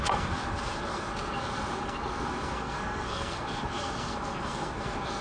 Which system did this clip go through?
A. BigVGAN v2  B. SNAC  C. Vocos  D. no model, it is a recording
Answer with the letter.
B